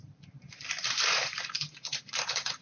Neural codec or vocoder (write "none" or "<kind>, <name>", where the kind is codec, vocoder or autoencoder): vocoder, BigVGAN v2